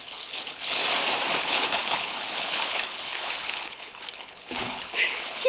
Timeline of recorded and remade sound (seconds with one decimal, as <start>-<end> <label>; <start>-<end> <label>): 0.0-0.8 remade; 0.8-1.4 recorded; 1.4-5.5 remade